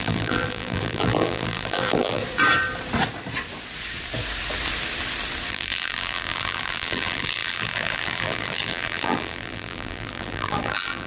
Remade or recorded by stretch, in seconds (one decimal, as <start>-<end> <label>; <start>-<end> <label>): 0.0-2.2 remade; 2.2-5.5 recorded; 5.5-11.1 remade